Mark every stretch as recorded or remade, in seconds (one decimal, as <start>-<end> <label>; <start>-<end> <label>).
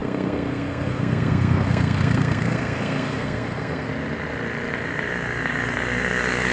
0.0-3.9 remade; 3.9-6.5 recorded